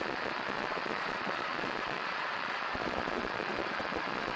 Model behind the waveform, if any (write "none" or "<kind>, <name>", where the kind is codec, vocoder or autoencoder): vocoder, Vocos